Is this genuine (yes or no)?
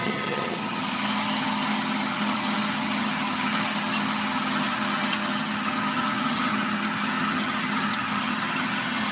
no